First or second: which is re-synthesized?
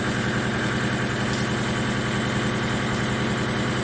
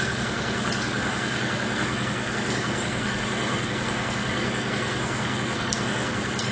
second